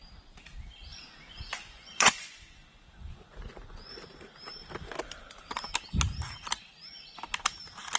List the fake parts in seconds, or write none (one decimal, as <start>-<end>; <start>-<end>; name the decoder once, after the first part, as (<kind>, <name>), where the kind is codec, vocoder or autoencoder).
0.9-3.9 (vocoder, Vocos)